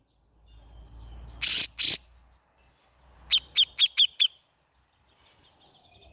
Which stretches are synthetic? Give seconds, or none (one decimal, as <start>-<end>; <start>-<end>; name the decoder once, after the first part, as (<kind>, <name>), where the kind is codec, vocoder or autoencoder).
none